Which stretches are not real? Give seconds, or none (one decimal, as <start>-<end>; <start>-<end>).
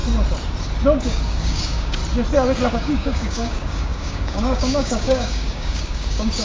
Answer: 1.0-2.0; 2.7-6.4